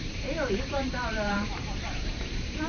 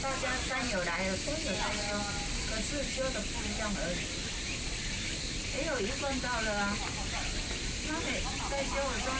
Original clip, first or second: second